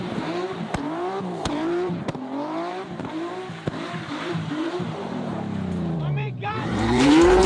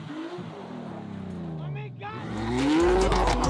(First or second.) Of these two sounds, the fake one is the first